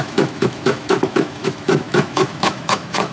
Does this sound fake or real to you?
fake